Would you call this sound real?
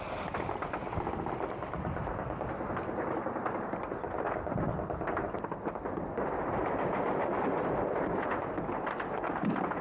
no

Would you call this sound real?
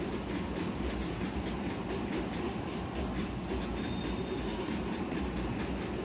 yes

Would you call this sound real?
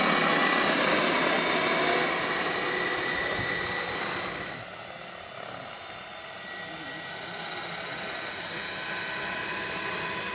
yes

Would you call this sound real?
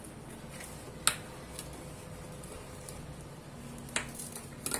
yes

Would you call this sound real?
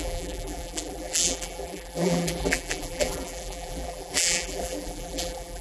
no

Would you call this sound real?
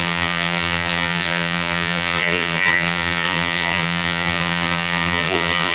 no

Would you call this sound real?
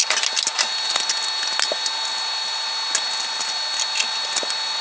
yes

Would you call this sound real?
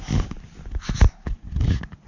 yes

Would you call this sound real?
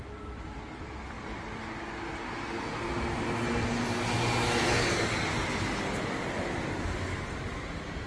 yes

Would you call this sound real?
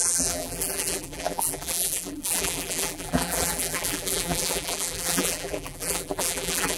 no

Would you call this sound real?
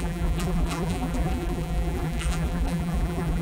no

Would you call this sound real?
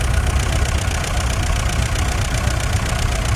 yes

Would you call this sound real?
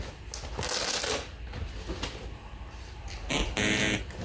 yes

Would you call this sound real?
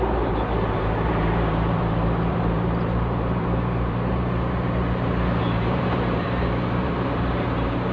no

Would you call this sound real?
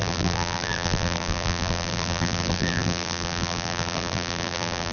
no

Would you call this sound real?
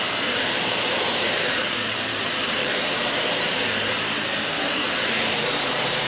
no